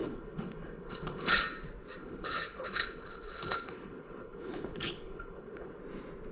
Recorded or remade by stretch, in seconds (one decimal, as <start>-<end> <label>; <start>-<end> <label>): 0.0-1.4 remade; 1.4-2.0 recorded; 2.0-5.8 remade; 5.8-6.3 recorded